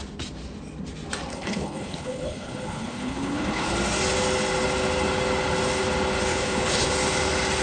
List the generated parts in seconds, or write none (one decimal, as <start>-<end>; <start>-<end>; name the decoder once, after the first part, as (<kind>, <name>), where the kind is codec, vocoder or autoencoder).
1.3-3.7 (codec, HILCodec); 6.3-6.9